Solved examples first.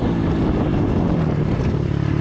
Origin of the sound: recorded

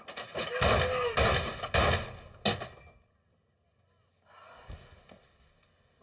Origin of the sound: recorded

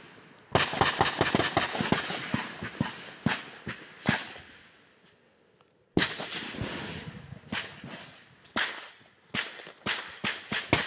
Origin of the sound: recorded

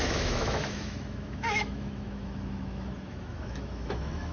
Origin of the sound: remade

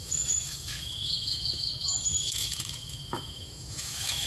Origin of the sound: remade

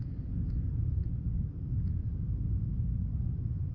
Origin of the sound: recorded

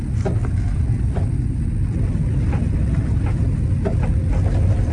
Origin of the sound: recorded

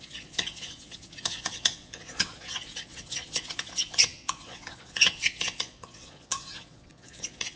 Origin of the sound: remade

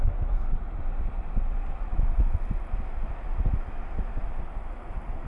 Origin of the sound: recorded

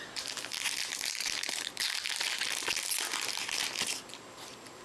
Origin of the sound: recorded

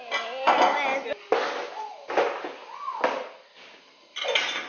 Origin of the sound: recorded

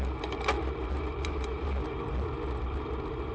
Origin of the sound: recorded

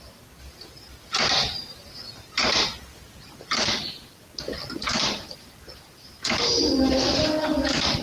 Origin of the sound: recorded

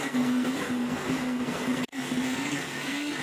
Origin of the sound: remade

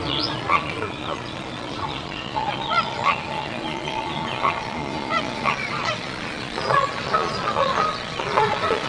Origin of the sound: remade